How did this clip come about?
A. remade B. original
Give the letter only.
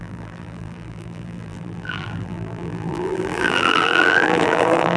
A